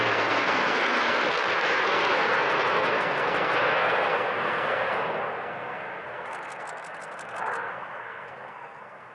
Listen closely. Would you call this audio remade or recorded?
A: remade